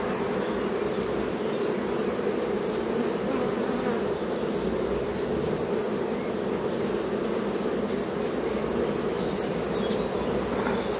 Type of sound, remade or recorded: recorded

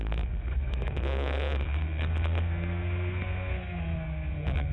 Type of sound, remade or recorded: remade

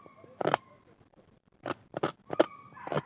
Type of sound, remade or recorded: recorded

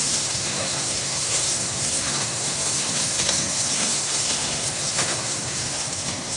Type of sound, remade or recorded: remade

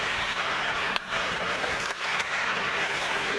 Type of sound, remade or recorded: remade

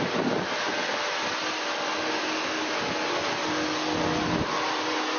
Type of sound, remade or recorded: recorded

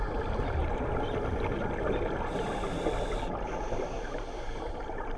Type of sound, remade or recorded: recorded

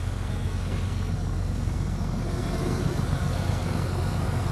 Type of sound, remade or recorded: remade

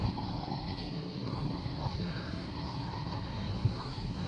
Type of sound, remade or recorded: remade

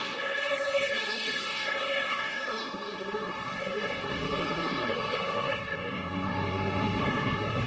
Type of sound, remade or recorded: remade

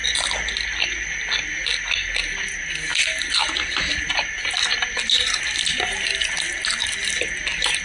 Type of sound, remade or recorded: recorded